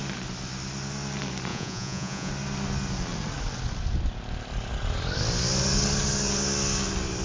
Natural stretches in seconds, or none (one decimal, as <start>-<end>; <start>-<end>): 0.0-1.5; 2.3-7.2